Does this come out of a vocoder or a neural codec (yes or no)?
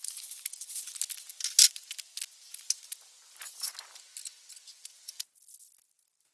no